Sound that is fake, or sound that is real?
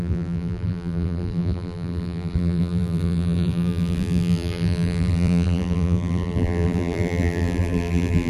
fake